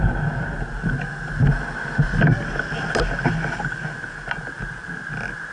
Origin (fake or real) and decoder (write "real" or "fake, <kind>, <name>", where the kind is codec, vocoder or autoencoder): real